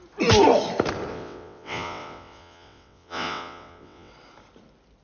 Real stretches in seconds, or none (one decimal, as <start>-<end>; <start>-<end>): 0.0-1.1; 4.1-5.0